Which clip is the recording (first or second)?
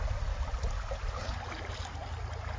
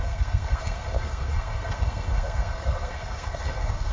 first